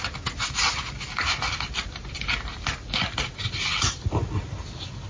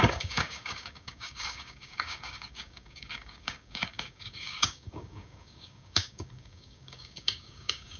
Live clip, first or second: first